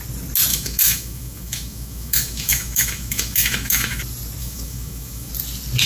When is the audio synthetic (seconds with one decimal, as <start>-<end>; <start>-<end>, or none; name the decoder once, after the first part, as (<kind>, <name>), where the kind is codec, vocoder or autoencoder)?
0.5-4.0 (autoencoder, DAC-VAE); 4.4-5.3